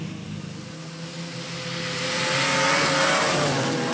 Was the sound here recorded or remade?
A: recorded